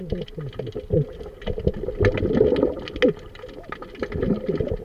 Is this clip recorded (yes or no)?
yes